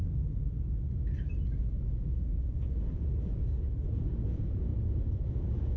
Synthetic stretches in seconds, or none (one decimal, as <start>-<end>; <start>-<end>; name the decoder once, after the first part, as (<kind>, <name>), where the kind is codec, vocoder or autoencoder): 1.6-4.7 (vocoder, Vocos); 5.3-5.8